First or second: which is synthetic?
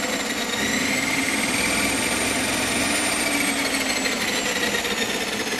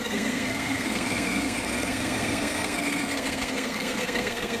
second